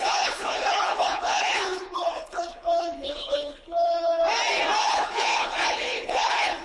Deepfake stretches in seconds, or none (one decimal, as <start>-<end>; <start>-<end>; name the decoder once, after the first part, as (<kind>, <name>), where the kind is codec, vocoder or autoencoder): 0.0-4.2 (codec, HILCodec); 4.8-6.6